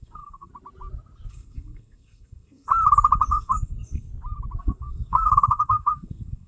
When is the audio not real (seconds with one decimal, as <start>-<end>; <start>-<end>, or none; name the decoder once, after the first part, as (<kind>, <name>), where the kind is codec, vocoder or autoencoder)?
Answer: 0.0-0.5 (codec, SNAC); 1.3-2.7; 3.3-4.1; 4.6-6.5

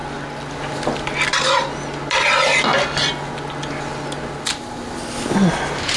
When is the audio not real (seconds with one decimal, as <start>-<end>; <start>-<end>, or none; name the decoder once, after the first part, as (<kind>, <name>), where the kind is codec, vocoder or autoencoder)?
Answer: none

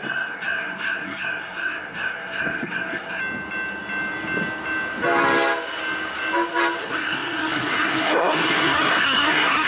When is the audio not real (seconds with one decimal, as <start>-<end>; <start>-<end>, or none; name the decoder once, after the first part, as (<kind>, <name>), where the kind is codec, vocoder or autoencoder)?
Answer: 0.0-3.2 (codec, SNAC); 6.8-9.7

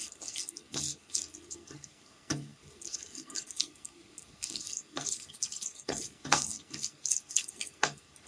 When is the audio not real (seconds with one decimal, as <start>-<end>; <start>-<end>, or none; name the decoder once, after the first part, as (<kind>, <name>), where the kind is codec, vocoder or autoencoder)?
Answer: 0.0-8.3 (codec, SNAC)

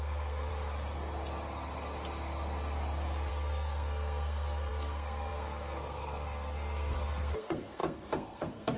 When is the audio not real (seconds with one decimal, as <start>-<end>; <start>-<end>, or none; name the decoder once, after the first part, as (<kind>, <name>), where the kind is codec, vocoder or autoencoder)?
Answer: 0.0-0.5 (codec, SNAC); 3.3-8.8